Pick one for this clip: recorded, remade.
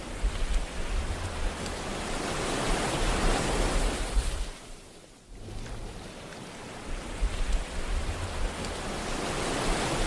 recorded